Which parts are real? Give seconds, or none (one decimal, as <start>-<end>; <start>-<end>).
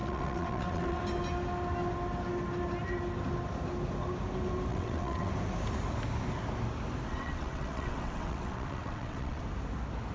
1.0-4.7; 5.3-7.1; 9.4-10.1